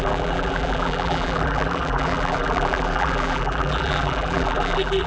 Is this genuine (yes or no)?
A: no